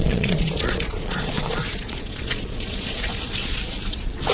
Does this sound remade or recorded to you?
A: remade